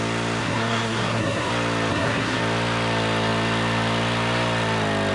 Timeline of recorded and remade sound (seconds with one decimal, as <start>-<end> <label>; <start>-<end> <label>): 0.0-0.4 recorded; 0.4-1.5 remade; 1.5-1.9 recorded; 1.9-2.4 remade; 2.4-5.1 recorded